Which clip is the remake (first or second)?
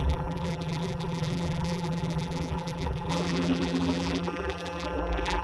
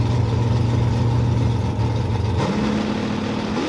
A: first